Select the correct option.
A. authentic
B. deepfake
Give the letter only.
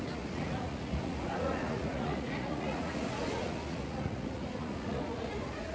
B